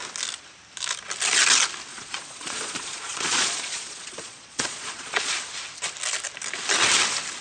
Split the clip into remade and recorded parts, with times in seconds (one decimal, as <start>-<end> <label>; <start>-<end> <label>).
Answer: 0.0-1.9 recorded; 1.9-5.3 remade; 5.3-7.4 recorded